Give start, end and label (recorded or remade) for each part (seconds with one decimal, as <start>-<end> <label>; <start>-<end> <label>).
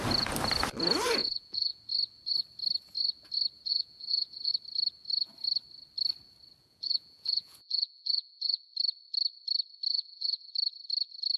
0.0-1.2 recorded; 1.2-1.8 remade; 1.8-3.7 recorded; 3.7-4.5 remade; 4.5-6.6 recorded; 6.6-8.6 remade; 8.6-9.9 recorded; 9.9-10.5 remade; 10.5-11.4 recorded